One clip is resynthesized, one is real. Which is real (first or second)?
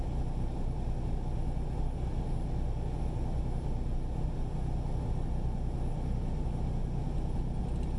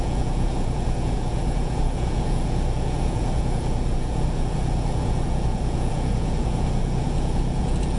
first